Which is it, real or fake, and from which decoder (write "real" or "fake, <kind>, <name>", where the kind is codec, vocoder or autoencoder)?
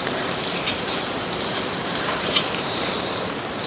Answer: fake, vocoder, BigVGAN v2